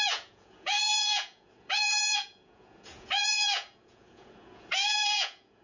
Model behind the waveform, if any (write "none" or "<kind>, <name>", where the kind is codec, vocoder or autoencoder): vocoder, Vocos